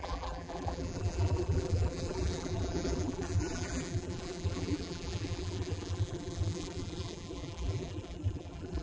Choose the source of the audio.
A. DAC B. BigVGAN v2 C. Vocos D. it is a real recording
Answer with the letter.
B